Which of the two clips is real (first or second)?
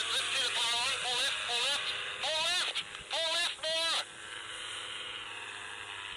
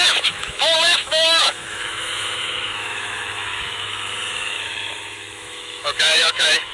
first